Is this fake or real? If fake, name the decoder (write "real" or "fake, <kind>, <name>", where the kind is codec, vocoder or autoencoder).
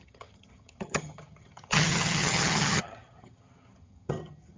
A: fake, vocoder, HiFi-GAN